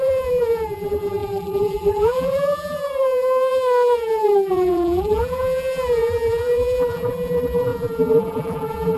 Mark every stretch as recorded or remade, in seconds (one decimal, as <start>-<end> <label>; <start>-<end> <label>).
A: 0.0-9.0 remade